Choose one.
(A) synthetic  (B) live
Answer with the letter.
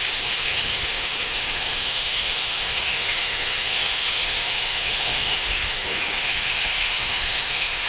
A